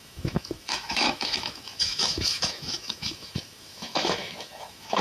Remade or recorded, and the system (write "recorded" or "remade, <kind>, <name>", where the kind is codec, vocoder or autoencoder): remade, autoencoder, DAC-VAE